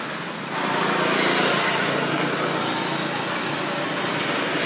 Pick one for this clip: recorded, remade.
recorded